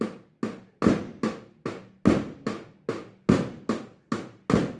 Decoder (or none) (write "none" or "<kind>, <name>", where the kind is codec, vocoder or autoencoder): none